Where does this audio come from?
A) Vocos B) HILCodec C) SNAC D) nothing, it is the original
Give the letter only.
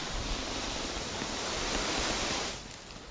D